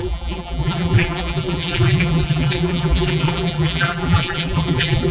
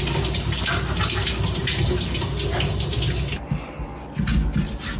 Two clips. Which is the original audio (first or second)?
second